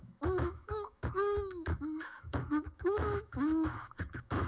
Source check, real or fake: fake